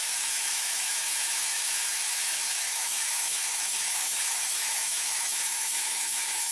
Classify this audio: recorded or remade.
remade